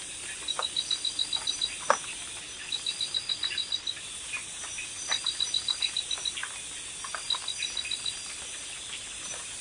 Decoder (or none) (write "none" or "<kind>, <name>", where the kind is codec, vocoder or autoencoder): none